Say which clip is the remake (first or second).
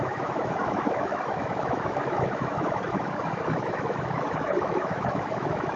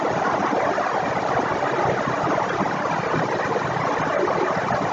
first